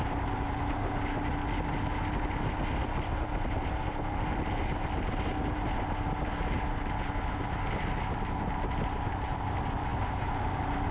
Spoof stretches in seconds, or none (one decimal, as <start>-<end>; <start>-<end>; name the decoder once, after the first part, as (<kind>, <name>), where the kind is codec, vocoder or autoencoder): none